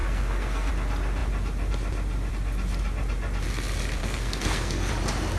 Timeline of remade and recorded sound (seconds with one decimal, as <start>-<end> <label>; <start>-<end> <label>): 0.0-0.7 remade; 0.7-4.0 recorded; 4.0-4.9 remade; 4.9-5.4 recorded